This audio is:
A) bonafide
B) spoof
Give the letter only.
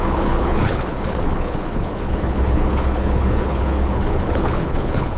B